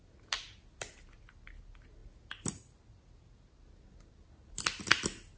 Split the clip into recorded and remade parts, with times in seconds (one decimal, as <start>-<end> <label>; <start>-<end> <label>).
0.0-5.4 recorded